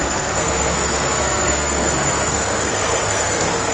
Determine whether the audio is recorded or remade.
remade